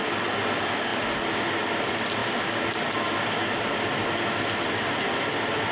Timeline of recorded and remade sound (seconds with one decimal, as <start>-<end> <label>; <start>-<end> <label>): 0.0-5.7 recorded